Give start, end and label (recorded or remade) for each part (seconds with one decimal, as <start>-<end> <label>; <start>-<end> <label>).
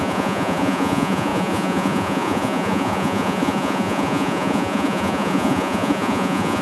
0.0-6.6 remade